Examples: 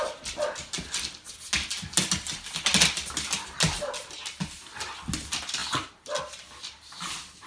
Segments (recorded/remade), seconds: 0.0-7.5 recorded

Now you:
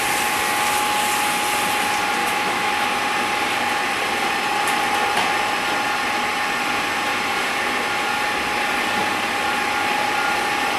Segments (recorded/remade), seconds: 0.0-2.2 recorded; 2.2-2.7 remade; 2.7-10.8 recorded